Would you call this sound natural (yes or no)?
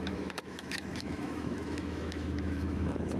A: no